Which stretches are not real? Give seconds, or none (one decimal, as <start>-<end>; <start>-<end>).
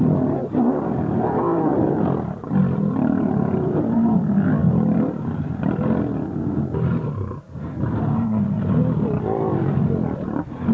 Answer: none